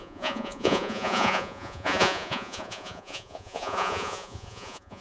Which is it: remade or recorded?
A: remade